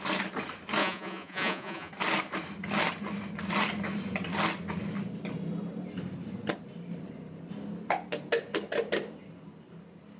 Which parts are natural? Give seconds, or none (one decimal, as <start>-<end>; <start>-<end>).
0.0-0.8; 1.9-10.2